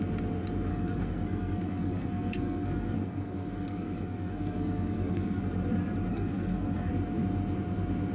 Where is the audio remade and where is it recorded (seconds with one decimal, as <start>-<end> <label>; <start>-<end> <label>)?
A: 0.0-0.7 recorded; 0.7-5.4 remade; 5.4-6.1 recorded; 6.1-6.9 remade; 6.9-8.1 recorded

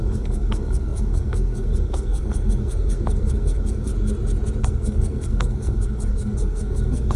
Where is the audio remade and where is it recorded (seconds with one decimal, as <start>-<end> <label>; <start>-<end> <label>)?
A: 0.0-3.9 remade; 3.9-4.6 recorded; 4.6-7.2 remade

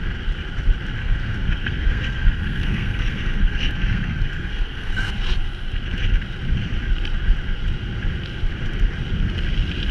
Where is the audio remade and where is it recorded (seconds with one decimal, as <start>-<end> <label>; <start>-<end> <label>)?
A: 0.0-1.0 recorded; 1.0-5.1 remade; 5.1-9.9 recorded

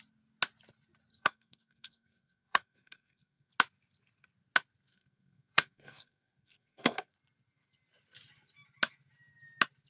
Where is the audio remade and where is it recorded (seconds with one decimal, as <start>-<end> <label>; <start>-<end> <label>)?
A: 0.0-1.1 recorded; 1.1-3.5 remade; 3.5-4.9 recorded; 4.9-7.1 remade; 7.1-9.9 recorded

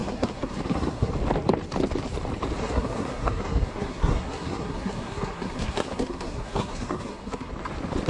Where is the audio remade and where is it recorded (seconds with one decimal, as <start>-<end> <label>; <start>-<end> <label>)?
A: 0.0-1.1 remade; 1.1-2.6 recorded; 2.6-7.5 remade; 7.5-8.1 recorded

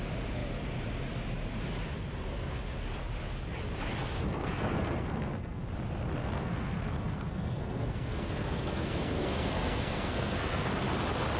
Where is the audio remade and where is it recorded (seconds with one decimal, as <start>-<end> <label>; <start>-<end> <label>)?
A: 0.0-4.0 recorded; 4.0-5.6 remade; 5.6-6.2 recorded; 6.2-10.7 remade; 10.7-11.4 recorded